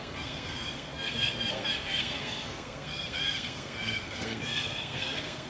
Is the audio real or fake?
fake